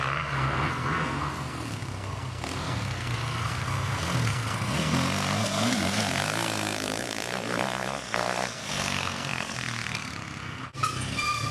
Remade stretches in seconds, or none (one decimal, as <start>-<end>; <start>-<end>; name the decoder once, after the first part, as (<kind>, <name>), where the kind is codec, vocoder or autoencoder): 0.0-11.5 (codec, SNAC)